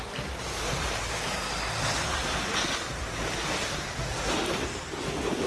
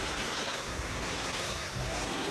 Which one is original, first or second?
first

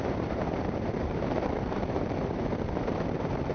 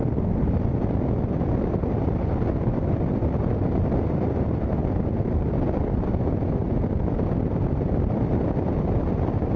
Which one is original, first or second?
second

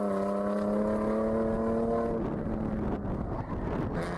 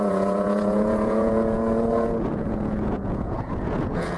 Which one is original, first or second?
first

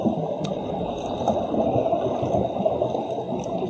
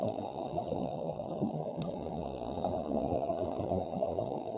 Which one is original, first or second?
first